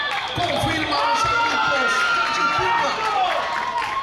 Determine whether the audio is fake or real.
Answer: real